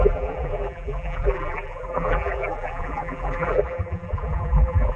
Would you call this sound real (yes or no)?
no